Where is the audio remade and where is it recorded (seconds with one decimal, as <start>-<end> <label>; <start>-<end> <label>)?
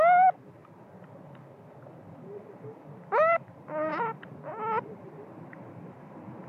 0.0-6.5 recorded